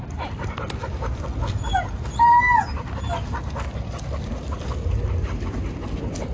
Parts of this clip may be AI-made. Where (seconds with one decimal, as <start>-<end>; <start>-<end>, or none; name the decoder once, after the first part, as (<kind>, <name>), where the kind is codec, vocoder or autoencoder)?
none

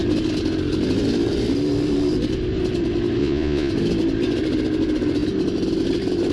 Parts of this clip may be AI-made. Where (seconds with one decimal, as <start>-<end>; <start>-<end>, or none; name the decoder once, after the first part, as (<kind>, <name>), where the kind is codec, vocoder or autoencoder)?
3.2-3.7 (vocoder, Vocos)

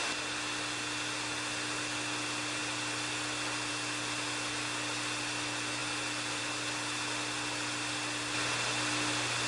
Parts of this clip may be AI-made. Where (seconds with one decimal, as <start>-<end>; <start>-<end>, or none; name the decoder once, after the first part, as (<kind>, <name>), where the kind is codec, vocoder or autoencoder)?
none